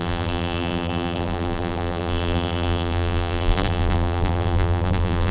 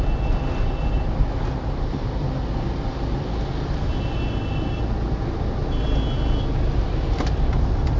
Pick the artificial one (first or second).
first